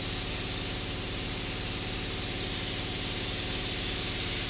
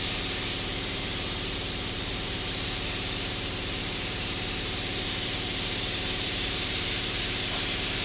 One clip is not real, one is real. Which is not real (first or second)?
second